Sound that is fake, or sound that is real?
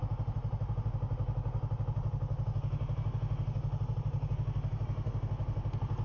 real